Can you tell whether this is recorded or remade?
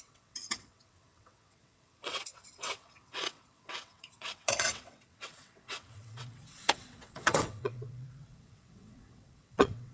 remade